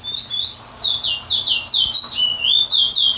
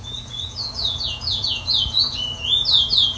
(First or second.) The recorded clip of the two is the first